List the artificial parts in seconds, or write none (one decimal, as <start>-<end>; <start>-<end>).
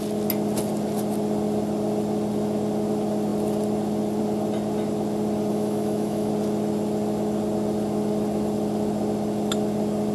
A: 5.5-6.3